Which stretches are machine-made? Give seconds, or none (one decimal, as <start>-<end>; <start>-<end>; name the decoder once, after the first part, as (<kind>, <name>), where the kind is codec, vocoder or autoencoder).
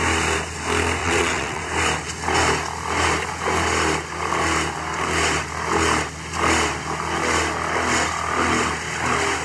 1.0-1.6 (vocoder, WaveNeXt)